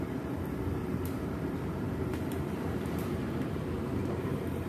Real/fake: fake